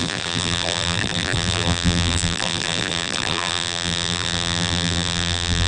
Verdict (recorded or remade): remade